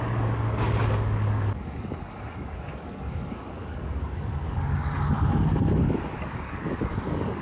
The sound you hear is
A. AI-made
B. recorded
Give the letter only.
A